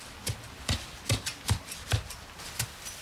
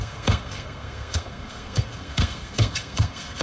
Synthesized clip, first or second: second